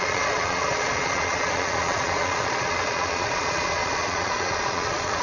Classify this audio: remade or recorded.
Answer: remade